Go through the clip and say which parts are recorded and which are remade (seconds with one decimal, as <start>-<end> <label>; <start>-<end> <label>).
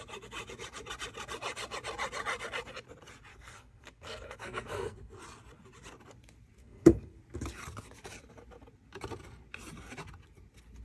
0.0-3.3 recorded; 3.3-5.2 remade; 5.2-6.6 recorded; 6.6-7.2 remade; 7.2-10.8 recorded